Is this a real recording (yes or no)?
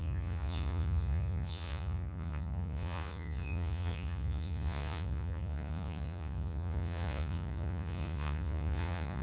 no